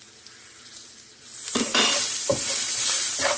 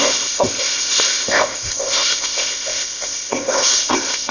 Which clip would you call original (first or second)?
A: first